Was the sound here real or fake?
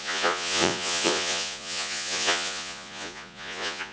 fake